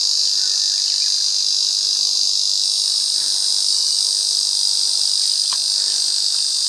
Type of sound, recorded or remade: recorded